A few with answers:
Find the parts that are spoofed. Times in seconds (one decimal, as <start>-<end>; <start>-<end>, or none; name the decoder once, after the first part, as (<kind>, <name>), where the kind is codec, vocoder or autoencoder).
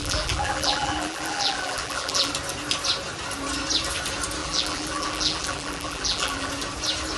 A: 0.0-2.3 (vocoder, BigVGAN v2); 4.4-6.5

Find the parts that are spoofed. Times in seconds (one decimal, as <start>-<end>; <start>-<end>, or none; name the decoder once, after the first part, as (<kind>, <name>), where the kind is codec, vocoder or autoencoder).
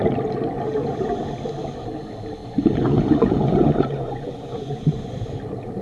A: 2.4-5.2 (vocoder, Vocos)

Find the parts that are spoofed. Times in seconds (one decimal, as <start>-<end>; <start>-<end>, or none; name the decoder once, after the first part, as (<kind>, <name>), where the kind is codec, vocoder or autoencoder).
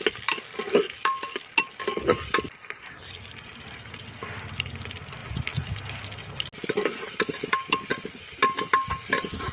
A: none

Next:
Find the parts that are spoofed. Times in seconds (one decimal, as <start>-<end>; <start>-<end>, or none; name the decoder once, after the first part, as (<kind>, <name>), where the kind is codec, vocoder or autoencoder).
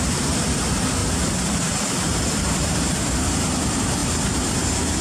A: 0.0-1.0 (vocoder, BigVGAN v2); 2.9-5.0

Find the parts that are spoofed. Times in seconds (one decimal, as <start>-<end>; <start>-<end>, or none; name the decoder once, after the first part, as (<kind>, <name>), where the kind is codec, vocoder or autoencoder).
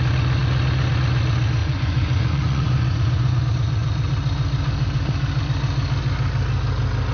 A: 1.6-3.4 (vocoder, Vocos)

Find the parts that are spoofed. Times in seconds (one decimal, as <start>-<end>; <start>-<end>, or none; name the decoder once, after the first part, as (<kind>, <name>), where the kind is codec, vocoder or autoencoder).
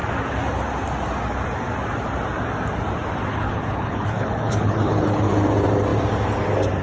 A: 3.3-5.3 (codec, HILCodec)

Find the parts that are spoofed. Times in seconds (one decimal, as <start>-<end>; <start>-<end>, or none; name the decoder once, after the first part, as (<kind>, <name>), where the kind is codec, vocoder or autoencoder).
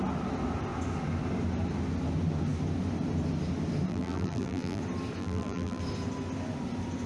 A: 3.9-4.8 (vocoder, BigVGAN v2); 5.2-5.8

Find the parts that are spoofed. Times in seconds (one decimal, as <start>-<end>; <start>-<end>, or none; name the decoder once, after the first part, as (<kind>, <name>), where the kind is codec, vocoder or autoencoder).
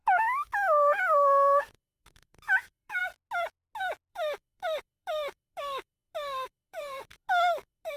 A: 0.0-3.0 (autoencoder, DAC-VAE); 4.1-8.0